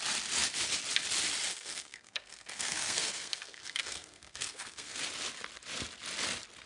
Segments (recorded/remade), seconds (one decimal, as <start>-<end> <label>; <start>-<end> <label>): 0.0-1.5 recorded; 1.5-5.0 remade; 5.0-6.7 recorded